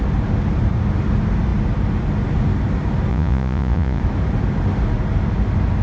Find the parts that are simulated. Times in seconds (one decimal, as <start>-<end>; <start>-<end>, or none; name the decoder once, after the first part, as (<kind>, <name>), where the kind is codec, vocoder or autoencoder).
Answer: 3.1-4.0 (vocoder, Vocos)